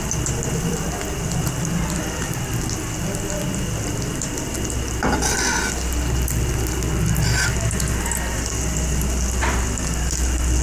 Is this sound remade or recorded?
recorded